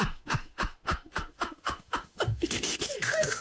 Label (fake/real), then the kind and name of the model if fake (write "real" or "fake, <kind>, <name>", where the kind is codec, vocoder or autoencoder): fake, autoencoder, DAC-VAE